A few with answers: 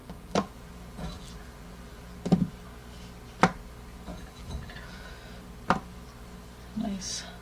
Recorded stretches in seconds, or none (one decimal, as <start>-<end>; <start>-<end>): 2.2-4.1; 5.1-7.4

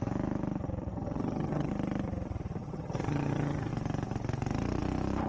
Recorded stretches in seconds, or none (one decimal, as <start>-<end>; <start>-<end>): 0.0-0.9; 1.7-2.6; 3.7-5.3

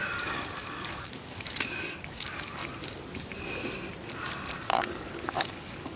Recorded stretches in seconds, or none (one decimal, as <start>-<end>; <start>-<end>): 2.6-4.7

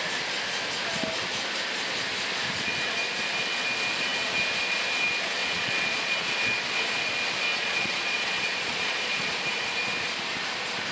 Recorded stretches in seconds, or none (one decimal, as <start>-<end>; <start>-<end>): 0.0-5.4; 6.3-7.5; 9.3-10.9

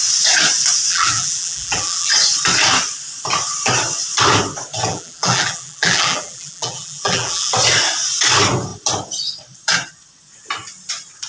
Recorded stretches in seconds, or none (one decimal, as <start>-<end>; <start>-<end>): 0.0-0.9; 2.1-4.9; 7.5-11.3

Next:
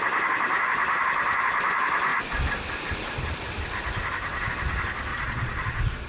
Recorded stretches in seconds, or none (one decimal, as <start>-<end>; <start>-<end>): 0.0-5.1

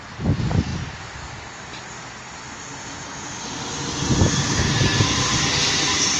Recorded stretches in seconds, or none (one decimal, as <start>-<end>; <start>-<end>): 0.0-6.2